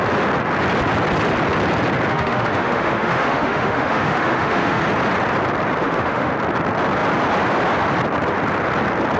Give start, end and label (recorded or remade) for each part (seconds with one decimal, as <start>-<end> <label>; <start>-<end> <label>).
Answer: 0.0-2.1 recorded; 2.1-4.8 remade; 4.8-5.8 recorded; 5.8-6.3 remade; 6.3-9.2 recorded